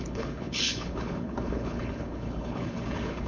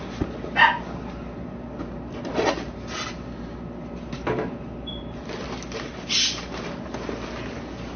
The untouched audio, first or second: second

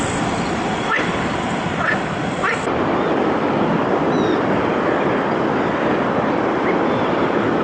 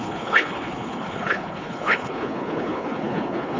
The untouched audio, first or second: first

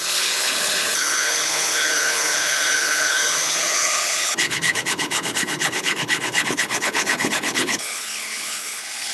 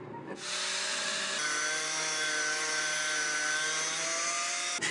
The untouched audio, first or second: second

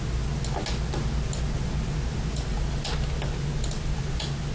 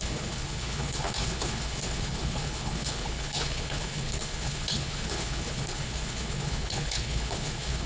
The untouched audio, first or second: first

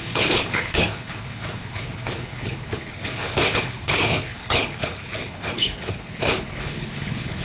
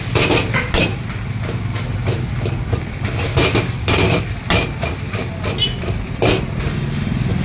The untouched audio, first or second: second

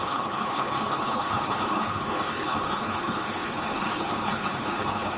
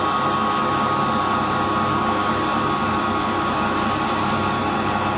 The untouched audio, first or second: second